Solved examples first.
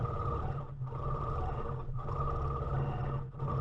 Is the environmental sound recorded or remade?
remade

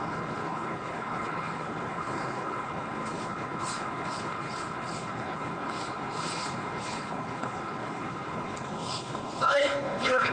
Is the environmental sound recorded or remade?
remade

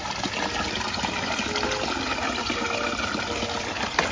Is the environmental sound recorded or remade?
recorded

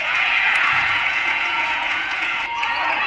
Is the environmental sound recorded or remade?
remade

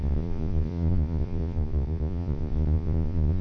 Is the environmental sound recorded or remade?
remade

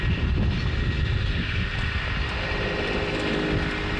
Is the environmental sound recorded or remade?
recorded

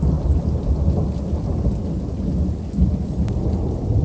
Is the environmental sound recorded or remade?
recorded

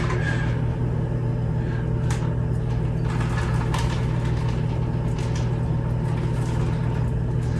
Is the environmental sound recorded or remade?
recorded